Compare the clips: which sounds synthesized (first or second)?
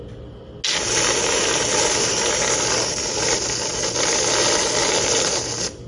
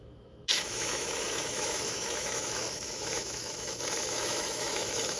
second